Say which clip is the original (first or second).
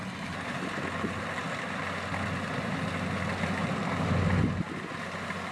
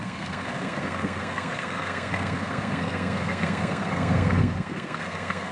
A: first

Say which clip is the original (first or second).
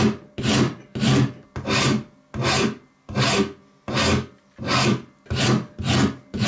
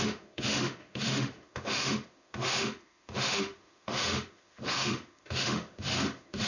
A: first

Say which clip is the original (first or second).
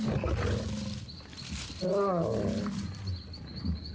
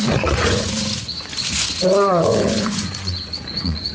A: first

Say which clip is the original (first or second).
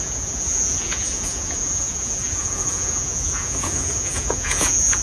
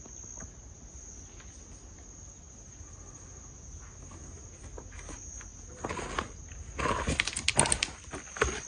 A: second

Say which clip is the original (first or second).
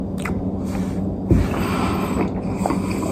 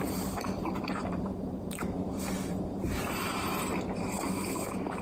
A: first